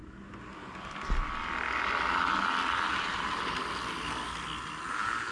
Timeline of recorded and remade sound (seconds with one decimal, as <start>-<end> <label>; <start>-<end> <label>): 0.0-5.3 recorded